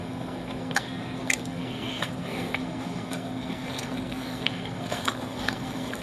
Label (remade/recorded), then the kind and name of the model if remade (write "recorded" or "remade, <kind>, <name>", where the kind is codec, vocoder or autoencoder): remade, codec, SNAC